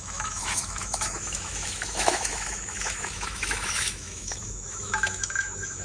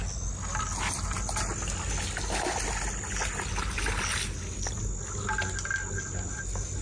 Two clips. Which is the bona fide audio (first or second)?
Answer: second